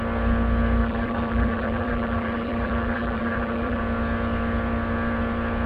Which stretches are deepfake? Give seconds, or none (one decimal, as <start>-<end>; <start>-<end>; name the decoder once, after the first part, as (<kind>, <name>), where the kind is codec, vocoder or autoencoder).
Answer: 0.8-3.8 (vocoder, BigVGAN v2)